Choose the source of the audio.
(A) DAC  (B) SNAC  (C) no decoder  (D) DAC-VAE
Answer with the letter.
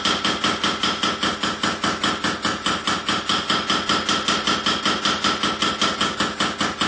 C